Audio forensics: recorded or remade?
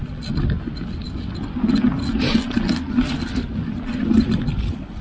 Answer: recorded